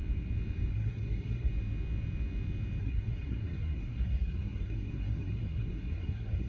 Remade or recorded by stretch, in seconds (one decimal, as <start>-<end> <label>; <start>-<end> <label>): 0.0-0.7 recorded; 0.7-1.5 remade; 1.5-2.8 recorded; 2.8-6.5 remade